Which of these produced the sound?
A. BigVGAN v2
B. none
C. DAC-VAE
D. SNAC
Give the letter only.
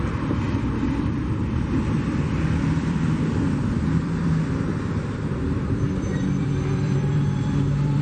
A